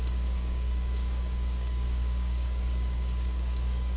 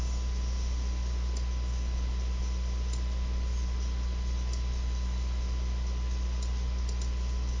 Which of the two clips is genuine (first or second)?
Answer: second